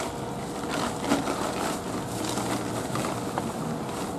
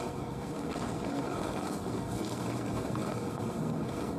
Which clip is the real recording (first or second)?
first